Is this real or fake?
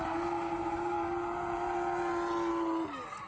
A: real